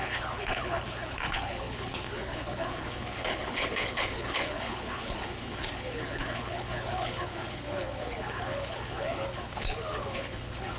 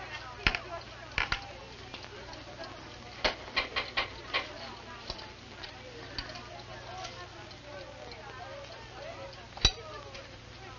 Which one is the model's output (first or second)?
first